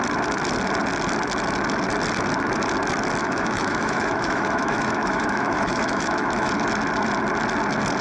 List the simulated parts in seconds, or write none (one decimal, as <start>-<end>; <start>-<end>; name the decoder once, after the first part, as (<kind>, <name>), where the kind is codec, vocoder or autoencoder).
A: 3.2-6.5 (autoencoder, DAC-VAE)